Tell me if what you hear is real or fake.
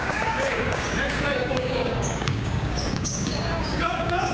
fake